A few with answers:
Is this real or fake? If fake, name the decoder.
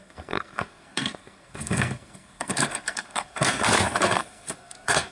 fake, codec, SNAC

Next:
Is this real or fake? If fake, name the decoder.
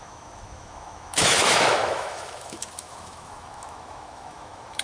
fake, autoencoder, DAC-VAE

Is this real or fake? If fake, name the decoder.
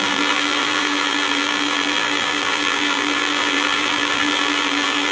fake, vocoder, BigVGAN v2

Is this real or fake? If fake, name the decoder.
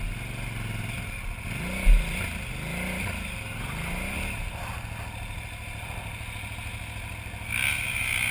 real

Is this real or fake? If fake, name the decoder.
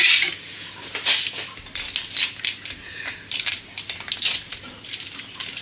real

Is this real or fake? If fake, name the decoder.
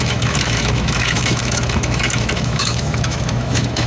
fake, autoencoder, DAC-VAE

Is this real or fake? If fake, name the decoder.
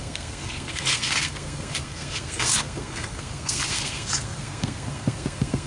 fake, codec, SNAC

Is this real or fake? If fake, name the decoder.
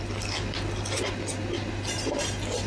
real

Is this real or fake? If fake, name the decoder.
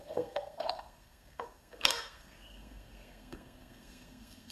fake, codec, SNAC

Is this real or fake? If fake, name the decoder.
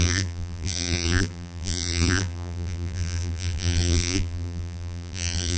fake, vocoder, BigVGAN v2